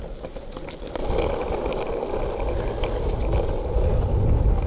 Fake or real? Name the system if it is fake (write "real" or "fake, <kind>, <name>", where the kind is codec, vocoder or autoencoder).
real